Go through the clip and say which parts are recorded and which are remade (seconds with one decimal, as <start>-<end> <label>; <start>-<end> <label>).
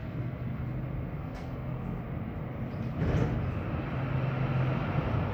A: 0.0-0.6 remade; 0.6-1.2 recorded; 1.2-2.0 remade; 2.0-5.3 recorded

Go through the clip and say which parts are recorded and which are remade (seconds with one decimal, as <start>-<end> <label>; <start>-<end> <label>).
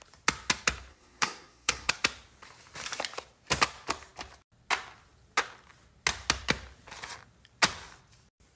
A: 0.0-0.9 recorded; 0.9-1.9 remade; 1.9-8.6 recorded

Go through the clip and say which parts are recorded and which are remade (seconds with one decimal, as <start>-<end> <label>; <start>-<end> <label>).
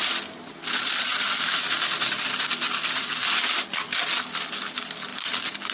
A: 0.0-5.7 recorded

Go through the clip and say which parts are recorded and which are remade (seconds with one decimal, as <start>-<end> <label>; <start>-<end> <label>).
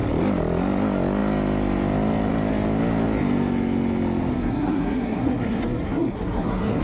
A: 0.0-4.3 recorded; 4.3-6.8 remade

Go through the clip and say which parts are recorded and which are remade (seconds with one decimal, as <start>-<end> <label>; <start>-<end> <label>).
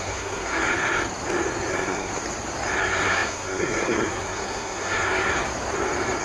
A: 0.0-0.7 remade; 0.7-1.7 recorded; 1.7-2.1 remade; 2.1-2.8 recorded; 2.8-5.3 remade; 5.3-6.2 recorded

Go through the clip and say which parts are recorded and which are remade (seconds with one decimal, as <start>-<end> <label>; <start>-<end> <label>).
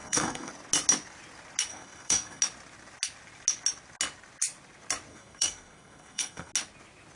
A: 0.0-0.5 remade; 0.5-1.7 recorded; 1.7-2.4 remade; 2.4-5.1 recorded; 5.1-6.5 remade; 6.5-7.2 recorded